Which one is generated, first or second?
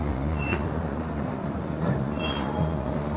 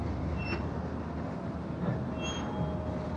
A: first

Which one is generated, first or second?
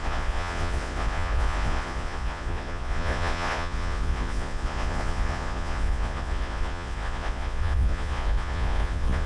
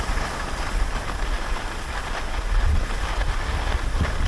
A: first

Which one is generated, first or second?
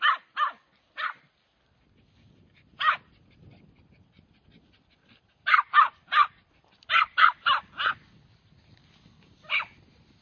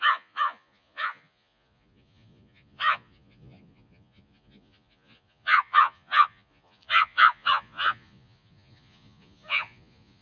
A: second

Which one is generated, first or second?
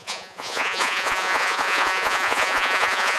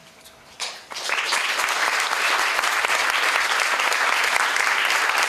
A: first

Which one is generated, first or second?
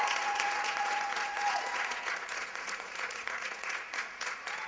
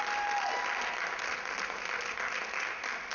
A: first